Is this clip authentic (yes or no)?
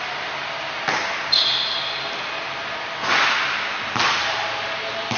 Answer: yes